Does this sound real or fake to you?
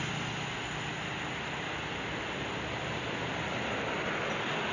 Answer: real